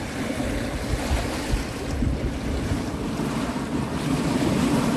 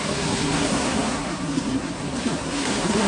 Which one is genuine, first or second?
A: first